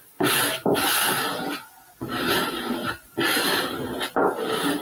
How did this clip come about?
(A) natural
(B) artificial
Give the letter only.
A